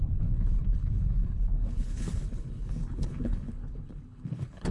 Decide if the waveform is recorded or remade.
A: remade